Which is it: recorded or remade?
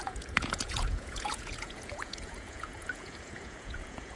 remade